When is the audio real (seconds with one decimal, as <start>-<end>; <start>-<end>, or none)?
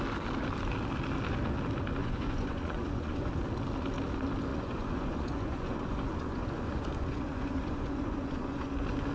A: 0.0-2.0; 3.3-4.5; 8.7-9.1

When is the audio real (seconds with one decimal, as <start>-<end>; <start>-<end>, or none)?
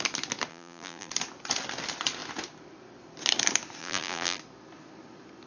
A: 0.0-0.5; 1.1-3.8; 4.4-5.5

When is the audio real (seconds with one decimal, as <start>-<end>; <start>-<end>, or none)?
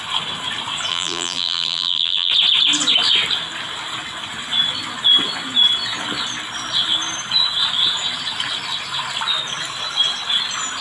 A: 0.0-0.9; 2.3-10.8